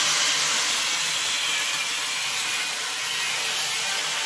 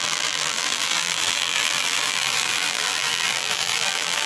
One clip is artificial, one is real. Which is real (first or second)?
first